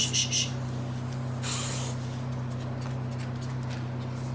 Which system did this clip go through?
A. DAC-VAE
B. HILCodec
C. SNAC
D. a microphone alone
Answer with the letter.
D